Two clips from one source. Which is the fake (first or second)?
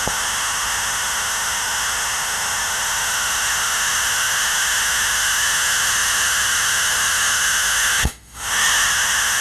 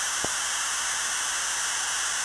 first